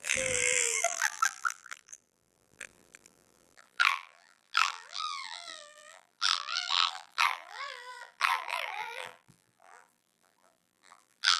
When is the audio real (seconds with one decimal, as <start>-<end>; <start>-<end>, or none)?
none